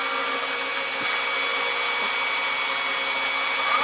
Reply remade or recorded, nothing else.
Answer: recorded